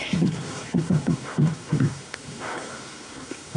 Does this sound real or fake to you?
fake